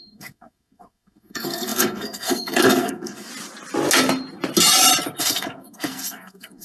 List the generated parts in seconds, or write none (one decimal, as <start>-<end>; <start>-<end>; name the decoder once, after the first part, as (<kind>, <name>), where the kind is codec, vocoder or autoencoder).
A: 0.0-3.3 (codec, SNAC); 5.2-6.6